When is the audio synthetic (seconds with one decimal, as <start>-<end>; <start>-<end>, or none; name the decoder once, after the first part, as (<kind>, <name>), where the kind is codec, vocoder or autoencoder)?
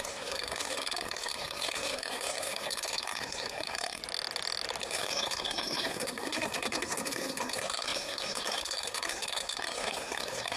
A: 0.0-4.0 (codec, SNAC); 4.8-10.6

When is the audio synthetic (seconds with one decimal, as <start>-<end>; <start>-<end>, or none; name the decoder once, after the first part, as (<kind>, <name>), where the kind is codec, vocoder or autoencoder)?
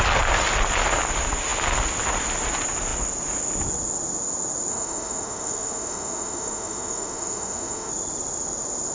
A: 4.7-7.9 (autoencoder, DAC-VAE)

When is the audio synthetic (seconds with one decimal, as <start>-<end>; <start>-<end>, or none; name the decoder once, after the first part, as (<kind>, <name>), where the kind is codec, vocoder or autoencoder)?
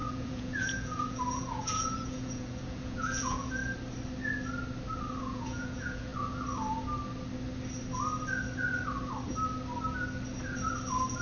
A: 0.0-3.6 (vocoder, Vocos); 5.2-6.1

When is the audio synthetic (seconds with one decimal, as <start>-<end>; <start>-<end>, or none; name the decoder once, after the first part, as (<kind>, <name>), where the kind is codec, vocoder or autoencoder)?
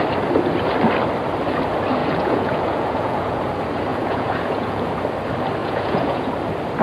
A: 2.0-3.4 (vocoder, Vocos); 3.9-4.9; 5.6-6.3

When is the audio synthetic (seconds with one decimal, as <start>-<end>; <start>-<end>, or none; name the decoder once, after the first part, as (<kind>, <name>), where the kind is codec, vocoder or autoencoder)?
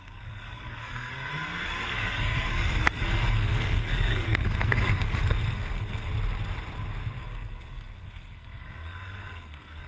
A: 0.0-6.1 (codec, SNAC); 7.2-9.9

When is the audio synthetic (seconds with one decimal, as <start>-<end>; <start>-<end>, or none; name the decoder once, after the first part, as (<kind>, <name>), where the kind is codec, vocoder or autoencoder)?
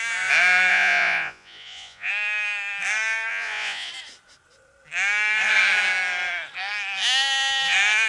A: 0.7-2.1 (vocoder, Vocos); 3.3-3.9